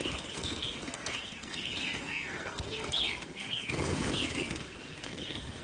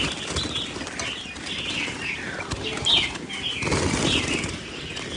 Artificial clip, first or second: first